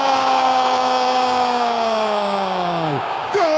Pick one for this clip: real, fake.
fake